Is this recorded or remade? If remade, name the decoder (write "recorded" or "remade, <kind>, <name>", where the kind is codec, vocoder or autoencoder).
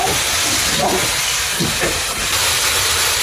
recorded